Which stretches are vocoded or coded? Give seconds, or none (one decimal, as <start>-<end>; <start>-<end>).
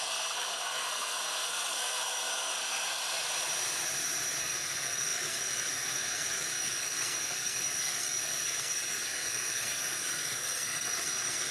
0.0-3.0; 4.4-11.5